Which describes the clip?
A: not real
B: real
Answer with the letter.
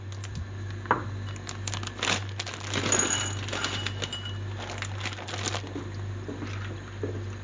B